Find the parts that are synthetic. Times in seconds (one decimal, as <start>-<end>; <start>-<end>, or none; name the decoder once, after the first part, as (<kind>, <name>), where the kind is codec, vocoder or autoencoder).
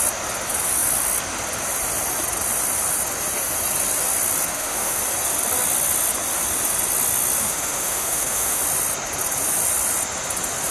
4.5-5.0 (autoencoder, DAC-VAE); 7.4-8.6